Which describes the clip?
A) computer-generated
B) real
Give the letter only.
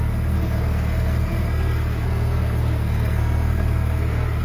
A